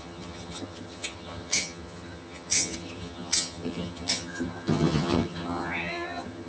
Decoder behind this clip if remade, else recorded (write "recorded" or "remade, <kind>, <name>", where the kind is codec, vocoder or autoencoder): remade, vocoder, HiFi-GAN